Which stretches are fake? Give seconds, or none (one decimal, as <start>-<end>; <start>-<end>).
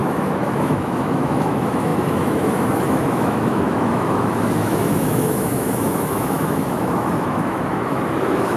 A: 0.0-8.6